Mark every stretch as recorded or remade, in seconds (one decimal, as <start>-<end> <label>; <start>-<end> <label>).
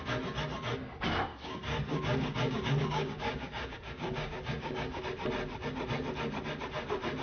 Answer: 0.0-1.3 recorded; 1.3-5.0 remade; 5.0-7.2 recorded